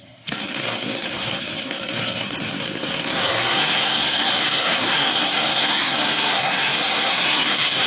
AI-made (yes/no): yes